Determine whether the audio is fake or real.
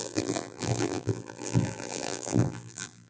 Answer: fake